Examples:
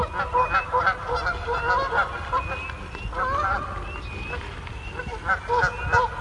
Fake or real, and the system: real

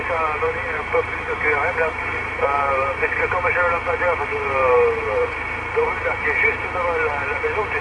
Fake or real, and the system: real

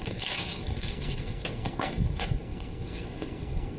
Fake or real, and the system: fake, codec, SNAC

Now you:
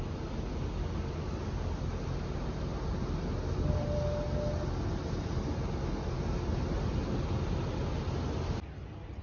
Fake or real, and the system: real